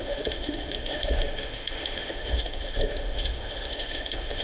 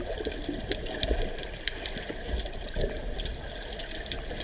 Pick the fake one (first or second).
first